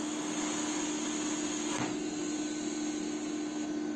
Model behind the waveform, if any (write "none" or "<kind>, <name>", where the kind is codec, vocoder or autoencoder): none